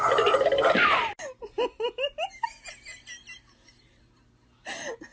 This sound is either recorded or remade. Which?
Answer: recorded